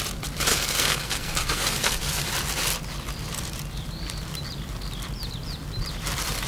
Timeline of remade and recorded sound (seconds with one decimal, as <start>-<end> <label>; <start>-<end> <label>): 0.0-0.5 recorded; 0.5-2.3 remade; 2.3-6.5 recorded